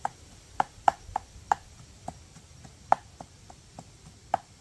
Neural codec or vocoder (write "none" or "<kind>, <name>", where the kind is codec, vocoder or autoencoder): vocoder, BigVGAN v2